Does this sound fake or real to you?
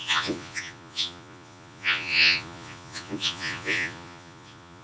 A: fake